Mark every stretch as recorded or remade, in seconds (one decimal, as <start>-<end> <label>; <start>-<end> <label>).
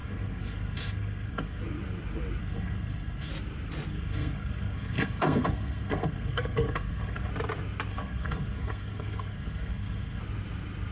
0.0-1.6 remade; 1.6-2.4 recorded; 2.4-3.3 remade; 3.3-3.9 recorded; 3.9-7.3 remade; 7.3-7.9 recorded; 7.9-10.2 remade; 10.2-10.9 recorded